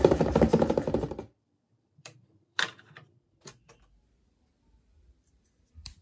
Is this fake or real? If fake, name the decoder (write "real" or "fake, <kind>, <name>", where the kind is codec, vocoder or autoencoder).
fake, vocoder, BigVGAN v2